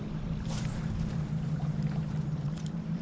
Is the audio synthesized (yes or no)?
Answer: yes